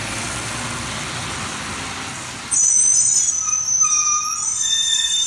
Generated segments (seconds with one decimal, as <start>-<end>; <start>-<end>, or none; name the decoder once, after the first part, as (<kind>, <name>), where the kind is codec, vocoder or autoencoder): none